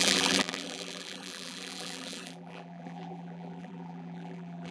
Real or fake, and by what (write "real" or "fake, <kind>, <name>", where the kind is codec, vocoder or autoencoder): fake, vocoder, BigVGAN v2